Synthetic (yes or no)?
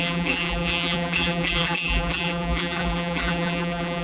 yes